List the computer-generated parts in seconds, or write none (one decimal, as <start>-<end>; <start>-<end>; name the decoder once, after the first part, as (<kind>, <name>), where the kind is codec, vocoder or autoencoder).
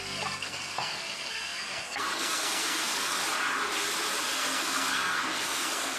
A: 0.0-3.2 (codec, SNAC); 4.2-6.0